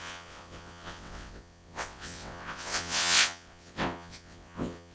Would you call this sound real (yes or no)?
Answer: no